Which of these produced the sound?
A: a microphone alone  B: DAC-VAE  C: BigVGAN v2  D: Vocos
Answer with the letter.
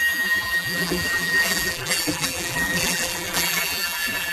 C